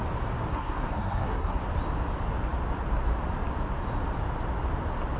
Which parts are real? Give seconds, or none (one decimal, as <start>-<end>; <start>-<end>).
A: 0.0-0.5; 1.6-5.2